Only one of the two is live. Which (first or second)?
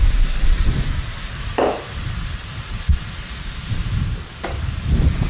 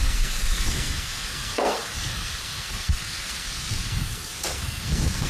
first